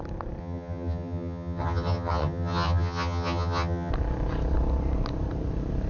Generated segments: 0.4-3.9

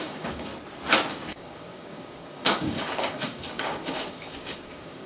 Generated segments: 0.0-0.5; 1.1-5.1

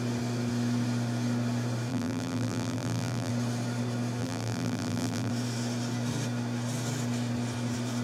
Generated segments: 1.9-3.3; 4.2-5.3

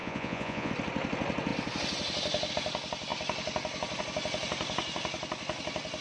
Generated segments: 0.0-0.7

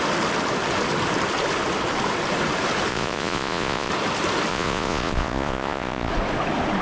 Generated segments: 2.9-3.9; 4.5-6.1

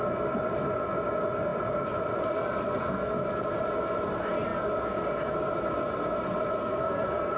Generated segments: 2.6-3.1; 6.6-7.4

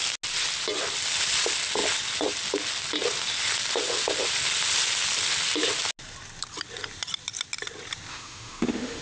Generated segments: 8.1-9.0